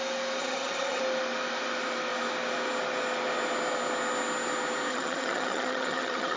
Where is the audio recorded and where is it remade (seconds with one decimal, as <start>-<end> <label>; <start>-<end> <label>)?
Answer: 0.0-0.4 recorded; 0.4-1.0 remade; 1.0-4.9 recorded; 4.9-6.4 remade